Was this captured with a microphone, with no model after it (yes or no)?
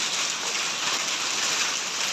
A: yes